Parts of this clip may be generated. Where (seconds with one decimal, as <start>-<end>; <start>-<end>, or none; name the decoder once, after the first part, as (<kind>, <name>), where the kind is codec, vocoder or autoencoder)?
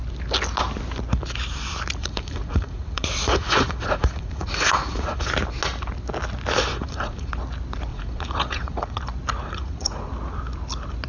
2.0-5.3 (vocoder, Vocos); 6.7-7.3; 7.9-9.0; 9.4-10.1